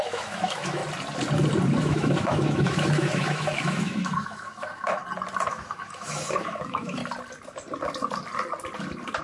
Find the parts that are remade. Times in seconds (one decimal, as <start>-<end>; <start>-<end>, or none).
0.0-0.8; 1.8-5.0; 5.5-7.0